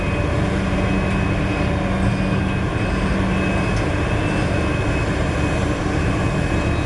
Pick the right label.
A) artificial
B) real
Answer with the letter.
B